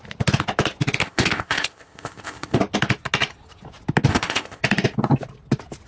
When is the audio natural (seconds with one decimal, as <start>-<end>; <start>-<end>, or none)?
0.0-1.0; 2.6-4.1; 4.6-5.9